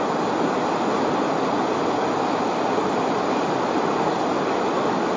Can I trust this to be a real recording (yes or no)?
yes